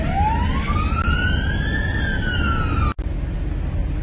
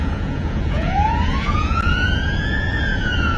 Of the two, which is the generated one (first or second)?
second